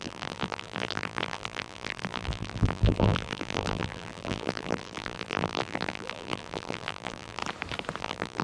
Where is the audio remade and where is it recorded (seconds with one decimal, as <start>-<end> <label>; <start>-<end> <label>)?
0.0-7.4 remade; 7.4-8.0 recorded; 8.0-8.4 remade